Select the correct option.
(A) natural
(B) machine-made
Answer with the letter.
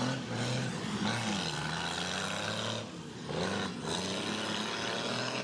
A